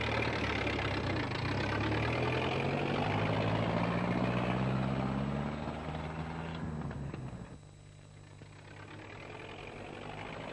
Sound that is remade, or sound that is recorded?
recorded